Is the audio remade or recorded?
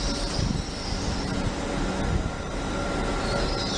recorded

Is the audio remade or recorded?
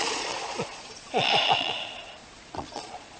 remade